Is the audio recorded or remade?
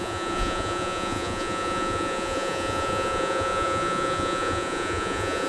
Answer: remade